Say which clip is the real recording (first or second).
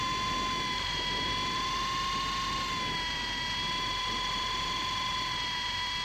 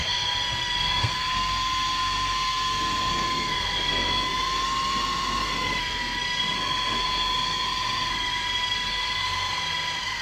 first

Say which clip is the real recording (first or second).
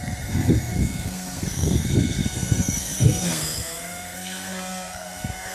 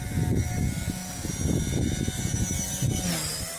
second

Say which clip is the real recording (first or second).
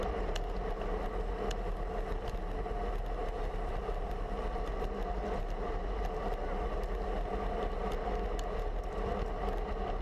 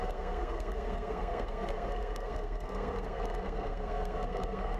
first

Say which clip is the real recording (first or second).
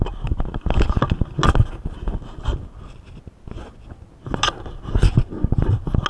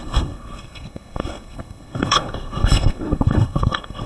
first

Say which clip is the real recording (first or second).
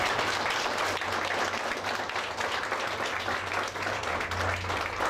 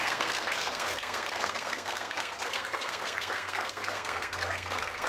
first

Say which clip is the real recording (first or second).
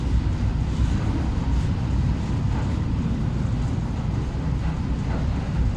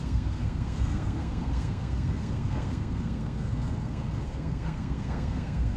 first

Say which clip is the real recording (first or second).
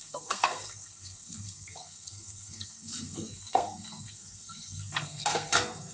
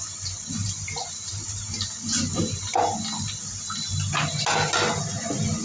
second